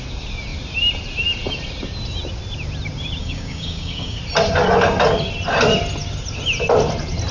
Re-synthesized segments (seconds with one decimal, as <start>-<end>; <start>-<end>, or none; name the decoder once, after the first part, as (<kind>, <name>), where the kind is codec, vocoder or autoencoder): 3.2-4.2 (codec, DAC)